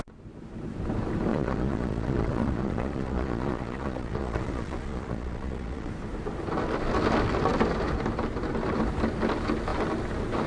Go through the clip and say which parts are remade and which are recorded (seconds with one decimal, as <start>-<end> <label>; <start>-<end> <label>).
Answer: 0.0-1.3 recorded; 1.3-5.9 remade; 5.9-10.5 recorded